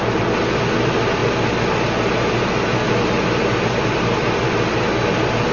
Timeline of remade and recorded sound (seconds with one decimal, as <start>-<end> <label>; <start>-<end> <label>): 0.0-5.5 recorded

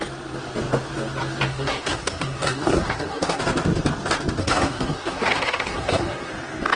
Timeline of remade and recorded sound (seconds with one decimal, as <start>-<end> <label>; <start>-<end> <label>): 0.0-1.5 recorded; 1.5-3.4 remade; 3.4-4.4 recorded; 4.4-6.3 remade; 6.3-6.8 recorded